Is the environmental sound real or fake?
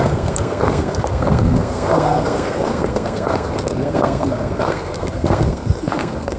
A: fake